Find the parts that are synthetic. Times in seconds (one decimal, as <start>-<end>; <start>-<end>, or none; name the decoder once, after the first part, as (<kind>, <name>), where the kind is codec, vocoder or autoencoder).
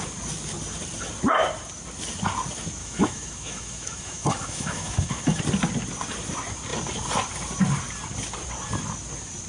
2.8-5.4 (autoencoder, DAC-VAE)